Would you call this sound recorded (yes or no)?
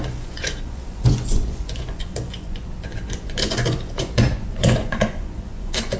no